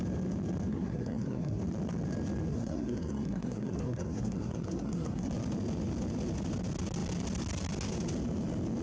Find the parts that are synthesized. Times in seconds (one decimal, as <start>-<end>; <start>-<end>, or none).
0.7-1.6; 2.5-5.3